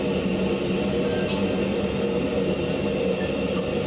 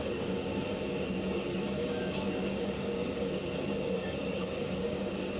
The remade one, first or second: second